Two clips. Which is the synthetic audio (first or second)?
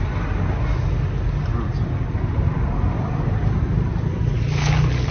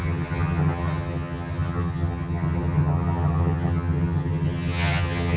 second